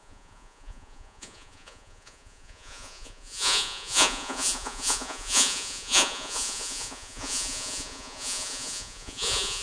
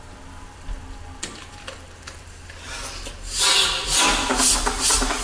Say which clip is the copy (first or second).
first